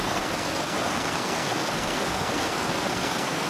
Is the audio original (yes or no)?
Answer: no